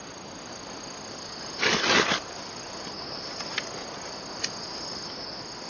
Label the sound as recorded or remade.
recorded